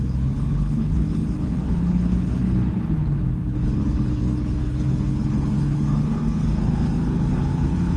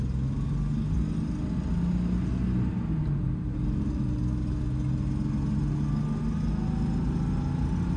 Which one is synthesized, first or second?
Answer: first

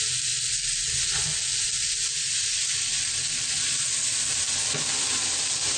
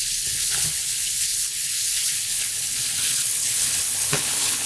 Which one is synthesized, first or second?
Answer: second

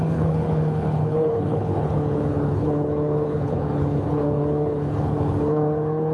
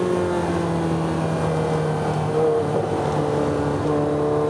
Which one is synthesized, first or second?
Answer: first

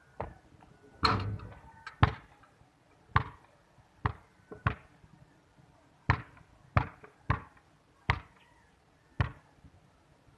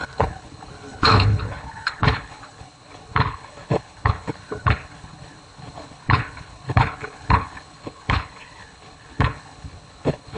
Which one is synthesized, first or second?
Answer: second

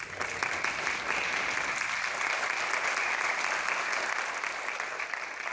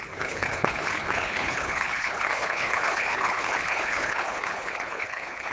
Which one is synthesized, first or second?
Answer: second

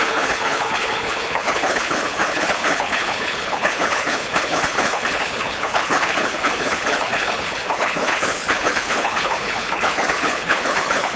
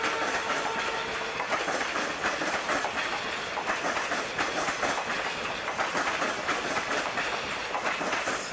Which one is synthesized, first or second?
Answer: first